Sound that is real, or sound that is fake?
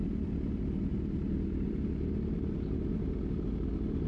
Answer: real